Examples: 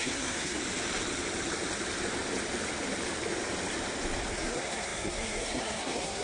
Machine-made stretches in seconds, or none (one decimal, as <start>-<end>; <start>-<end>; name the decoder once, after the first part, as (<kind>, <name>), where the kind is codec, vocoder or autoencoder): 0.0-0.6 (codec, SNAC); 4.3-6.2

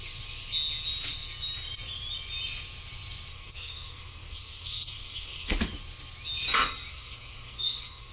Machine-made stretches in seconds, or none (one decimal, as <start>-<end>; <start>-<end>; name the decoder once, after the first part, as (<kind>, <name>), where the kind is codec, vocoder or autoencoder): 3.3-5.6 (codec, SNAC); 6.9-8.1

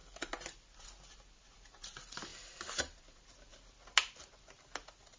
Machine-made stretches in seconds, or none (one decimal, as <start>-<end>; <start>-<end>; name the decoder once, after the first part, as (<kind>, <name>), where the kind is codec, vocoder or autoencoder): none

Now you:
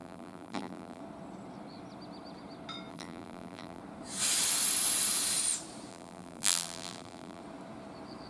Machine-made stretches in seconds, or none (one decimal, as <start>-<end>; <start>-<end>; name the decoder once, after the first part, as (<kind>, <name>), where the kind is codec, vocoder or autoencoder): 0.0-1.0 (vocoder, BigVGAN v2); 2.9-3.8; 5.9-7.4

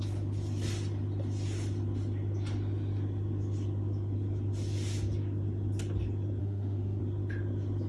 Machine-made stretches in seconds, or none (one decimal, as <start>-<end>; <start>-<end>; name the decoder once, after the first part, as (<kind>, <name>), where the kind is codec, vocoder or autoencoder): 6.4-7.0 (autoencoder, DAC-VAE)